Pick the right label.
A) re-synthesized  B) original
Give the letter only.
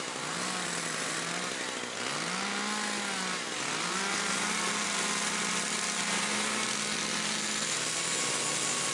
B